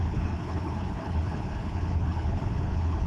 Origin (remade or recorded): remade